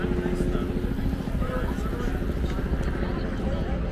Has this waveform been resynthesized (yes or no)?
no